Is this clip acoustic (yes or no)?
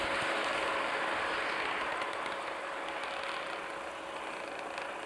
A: yes